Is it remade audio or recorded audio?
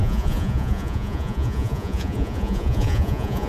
remade